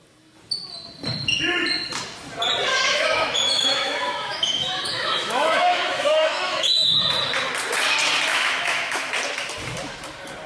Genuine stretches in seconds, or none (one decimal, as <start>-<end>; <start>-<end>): 0.0-2.7; 7.0-8.3; 9.1-10.5